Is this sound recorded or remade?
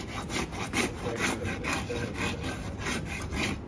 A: recorded